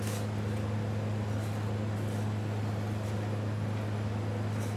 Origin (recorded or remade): recorded